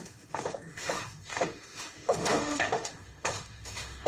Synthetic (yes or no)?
yes